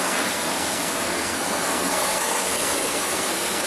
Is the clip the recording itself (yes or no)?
no